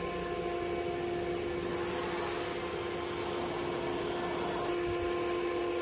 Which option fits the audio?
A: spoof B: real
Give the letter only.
B